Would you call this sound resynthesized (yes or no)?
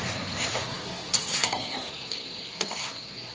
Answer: yes